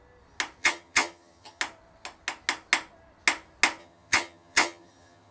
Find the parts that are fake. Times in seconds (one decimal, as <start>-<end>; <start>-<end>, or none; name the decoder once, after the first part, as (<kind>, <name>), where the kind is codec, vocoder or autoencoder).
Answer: 0.6-1.6 (vocoder, HiFi-GAN); 3.8-5.3